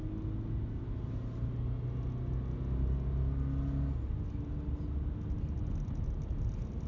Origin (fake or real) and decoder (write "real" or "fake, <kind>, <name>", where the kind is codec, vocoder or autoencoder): real